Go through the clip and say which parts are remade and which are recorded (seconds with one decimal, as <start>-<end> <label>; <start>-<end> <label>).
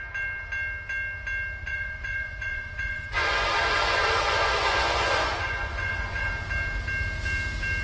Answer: 0.0-1.6 recorded; 1.6-6.3 remade; 6.3-7.8 recorded